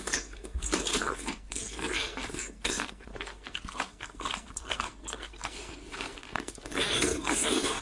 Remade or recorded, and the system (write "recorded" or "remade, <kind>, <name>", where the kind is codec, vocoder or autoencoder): remade, codec, SNAC